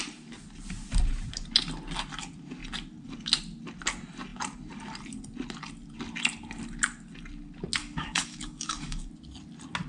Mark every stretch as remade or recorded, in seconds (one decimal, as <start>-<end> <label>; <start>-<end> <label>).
0.0-7.8 recorded; 7.8-9.1 remade; 9.1-9.9 recorded